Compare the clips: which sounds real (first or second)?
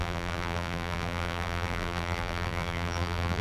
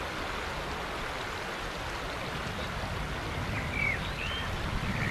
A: second